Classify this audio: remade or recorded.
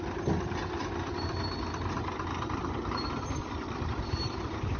recorded